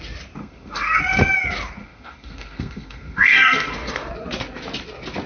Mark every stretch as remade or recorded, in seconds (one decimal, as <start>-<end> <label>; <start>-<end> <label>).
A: 0.0-0.4 recorded; 0.4-1.0 remade; 1.0-1.8 recorded; 1.8-4.1 remade; 4.1-5.3 recorded